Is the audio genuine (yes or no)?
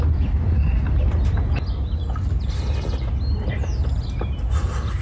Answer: yes